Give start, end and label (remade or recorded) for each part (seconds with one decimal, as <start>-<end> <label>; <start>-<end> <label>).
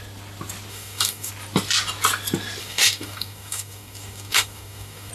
0.0-0.7 recorded; 0.7-1.3 remade; 1.3-2.6 recorded; 2.6-5.1 remade